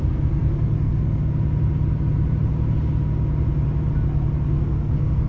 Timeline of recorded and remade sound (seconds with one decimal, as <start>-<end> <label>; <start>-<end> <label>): 0.0-1.3 remade; 1.3-4.5 recorded; 4.5-5.3 remade